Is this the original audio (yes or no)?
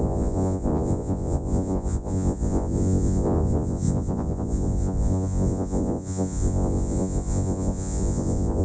no